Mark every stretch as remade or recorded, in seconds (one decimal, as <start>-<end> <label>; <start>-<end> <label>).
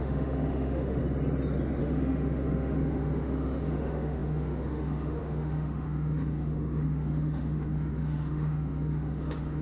0.0-1.0 remade; 1.0-1.8 recorded; 1.8-9.6 remade